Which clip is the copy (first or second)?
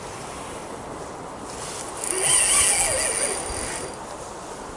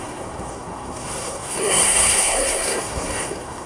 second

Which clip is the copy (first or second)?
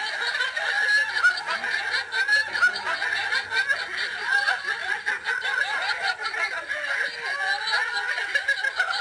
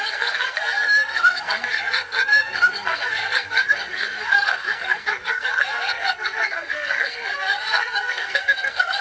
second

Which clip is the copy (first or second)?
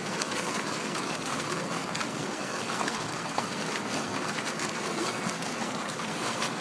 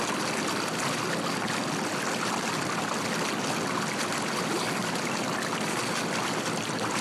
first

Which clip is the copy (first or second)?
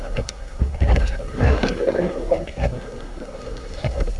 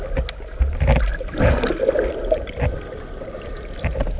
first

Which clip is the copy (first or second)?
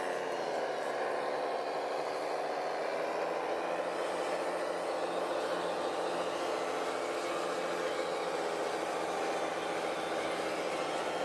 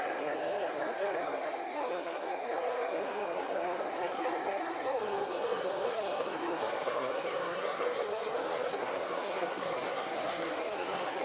second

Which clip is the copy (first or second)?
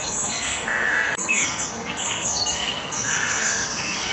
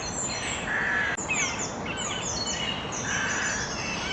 first